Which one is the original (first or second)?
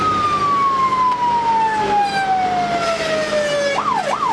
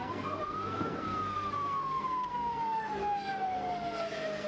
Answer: first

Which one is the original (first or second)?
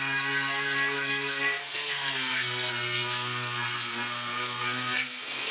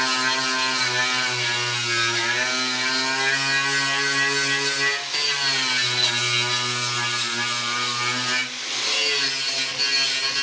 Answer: second